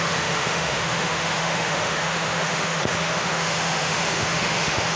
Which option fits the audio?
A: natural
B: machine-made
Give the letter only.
B